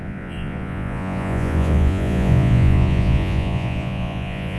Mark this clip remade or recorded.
remade